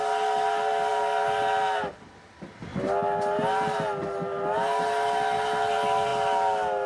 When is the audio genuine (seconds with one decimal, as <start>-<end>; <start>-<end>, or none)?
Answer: 0.0-6.9